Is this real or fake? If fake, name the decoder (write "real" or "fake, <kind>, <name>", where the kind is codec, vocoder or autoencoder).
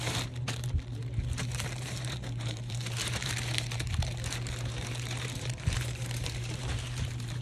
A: fake, vocoder, BigVGAN v2